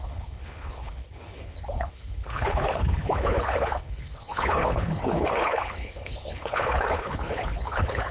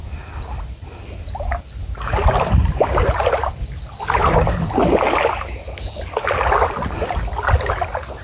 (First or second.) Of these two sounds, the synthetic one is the first